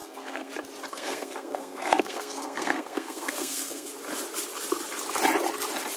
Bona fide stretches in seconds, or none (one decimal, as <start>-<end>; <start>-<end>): 0.5-0.9; 3.9-6.0